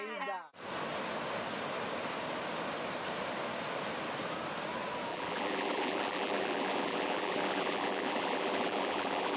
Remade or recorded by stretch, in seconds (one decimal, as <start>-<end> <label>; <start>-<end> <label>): 0.0-5.1 recorded; 5.1-9.4 remade